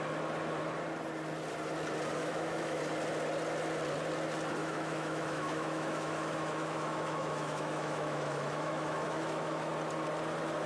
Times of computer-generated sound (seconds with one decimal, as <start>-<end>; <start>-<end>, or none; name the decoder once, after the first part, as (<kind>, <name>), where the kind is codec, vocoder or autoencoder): 2.2-2.8 (autoencoder, DAC-VAE); 4.6-9.7